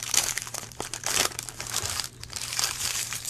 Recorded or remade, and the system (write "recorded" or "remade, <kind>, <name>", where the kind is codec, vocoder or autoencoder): remade, vocoder, BigVGAN v2